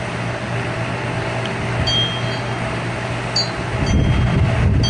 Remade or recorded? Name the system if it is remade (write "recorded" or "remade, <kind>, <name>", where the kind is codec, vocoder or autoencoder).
recorded